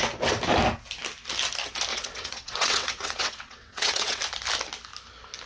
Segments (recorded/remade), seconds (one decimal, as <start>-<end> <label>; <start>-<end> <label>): 0.0-1.9 recorded; 1.9-4.2 remade; 4.2-5.5 recorded